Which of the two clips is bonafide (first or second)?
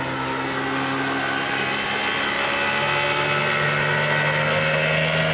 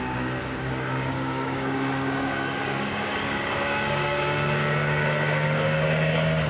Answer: first